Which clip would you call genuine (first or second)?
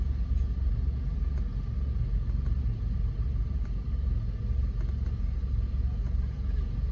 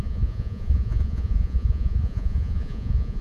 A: first